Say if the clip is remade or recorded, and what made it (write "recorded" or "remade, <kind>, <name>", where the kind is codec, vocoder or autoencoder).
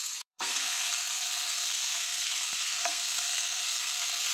remade, codec, SNAC